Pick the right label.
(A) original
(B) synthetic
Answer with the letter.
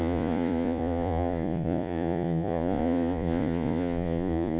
B